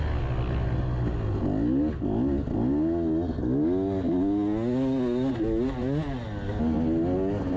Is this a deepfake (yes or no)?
no